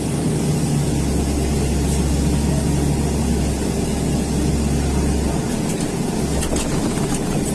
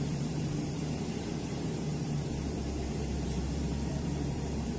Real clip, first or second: first